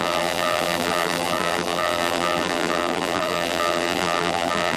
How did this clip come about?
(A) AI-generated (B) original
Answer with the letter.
A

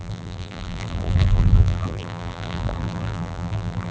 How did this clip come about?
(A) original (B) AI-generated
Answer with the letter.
B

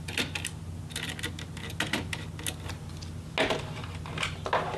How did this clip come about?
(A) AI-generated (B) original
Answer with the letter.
B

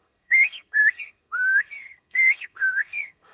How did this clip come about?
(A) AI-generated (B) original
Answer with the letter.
A